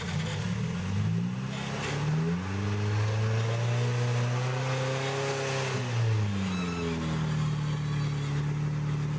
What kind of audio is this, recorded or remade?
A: recorded